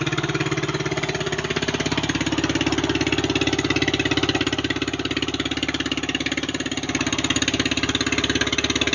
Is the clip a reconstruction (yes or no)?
no